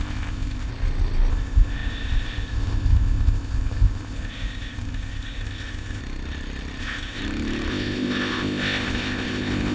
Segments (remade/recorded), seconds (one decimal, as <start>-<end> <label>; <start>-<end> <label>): 0.0-0.7 remade; 0.7-1.3 recorded; 1.3-6.0 remade; 6.0-6.8 recorded; 6.8-7.2 remade; 7.2-7.7 recorded; 7.7-9.7 remade